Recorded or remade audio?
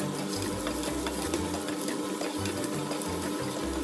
recorded